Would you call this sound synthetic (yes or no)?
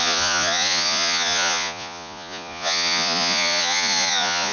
yes